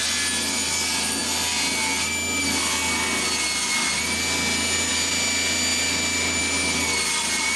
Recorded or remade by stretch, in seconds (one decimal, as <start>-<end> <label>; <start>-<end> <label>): 0.0-7.6 recorded

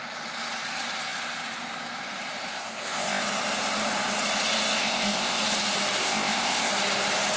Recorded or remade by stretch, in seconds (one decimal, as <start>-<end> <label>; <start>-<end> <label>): 0.0-2.5 recorded; 2.5-3.2 remade; 3.2-4.8 recorded; 4.8-5.4 remade; 5.4-6.0 recorded; 6.0-6.7 remade; 6.7-7.4 recorded

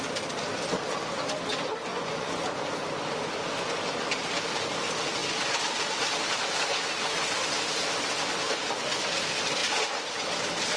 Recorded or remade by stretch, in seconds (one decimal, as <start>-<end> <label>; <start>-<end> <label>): 0.0-1.9 recorded; 1.9-2.5 remade; 2.5-10.8 recorded

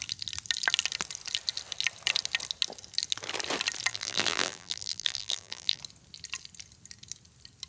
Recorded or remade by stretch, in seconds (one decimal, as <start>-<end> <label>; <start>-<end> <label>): 0.0-3.9 recorded; 3.9-5.8 remade; 5.8-7.7 recorded

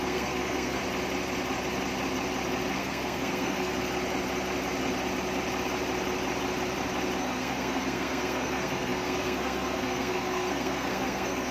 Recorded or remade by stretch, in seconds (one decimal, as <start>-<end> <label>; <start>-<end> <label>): 0.0-0.8 remade; 0.8-2.7 recorded; 2.7-3.7 remade; 3.7-7.2 recorded; 7.2-11.5 remade

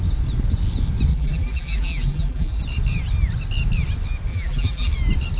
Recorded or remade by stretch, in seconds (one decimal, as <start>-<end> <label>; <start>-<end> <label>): 0.0-1.1 recorded; 1.1-2.6 remade; 2.6-4.3 recorded; 4.3-4.9 remade; 4.9-5.4 recorded

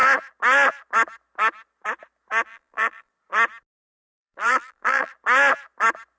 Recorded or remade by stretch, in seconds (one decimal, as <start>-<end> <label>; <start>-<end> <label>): 0.0-2.5 recorded; 2.5-3.1 remade; 3.1-4.0 recorded; 4.0-5.1 remade; 5.1-6.2 recorded

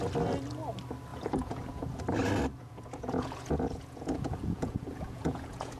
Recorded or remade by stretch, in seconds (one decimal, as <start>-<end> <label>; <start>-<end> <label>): 0.0-1.1 recorded; 1.1-2.0 remade; 2.0-2.6 recorded; 2.6-5.8 remade